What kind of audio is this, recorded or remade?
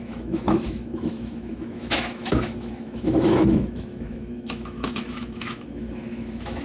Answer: remade